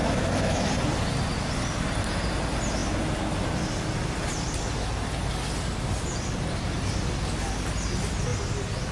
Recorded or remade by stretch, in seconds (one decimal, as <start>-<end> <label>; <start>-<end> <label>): 0.0-0.7 remade; 0.7-8.9 recorded